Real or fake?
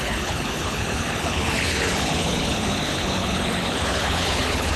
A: fake